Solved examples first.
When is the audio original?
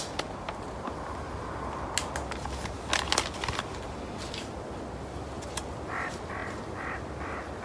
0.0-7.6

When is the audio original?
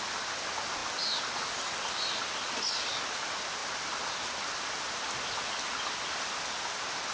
0.0-7.1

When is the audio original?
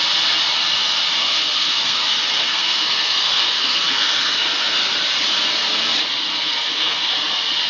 0.0-1.1; 4.9-6.3; 7.1-7.7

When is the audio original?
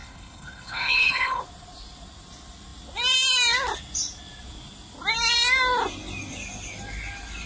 1.4-7.5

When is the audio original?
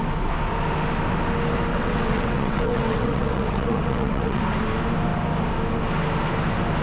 0.0-1.7; 4.4-6.8